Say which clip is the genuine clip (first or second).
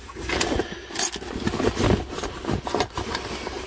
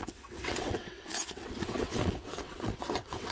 first